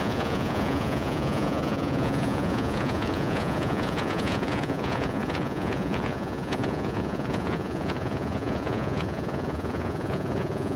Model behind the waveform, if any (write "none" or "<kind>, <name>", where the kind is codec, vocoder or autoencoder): vocoder, Vocos